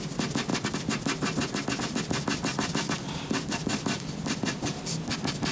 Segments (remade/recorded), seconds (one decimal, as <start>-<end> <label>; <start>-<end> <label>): 0.0-0.5 remade; 0.5-1.8 recorded; 1.8-5.5 remade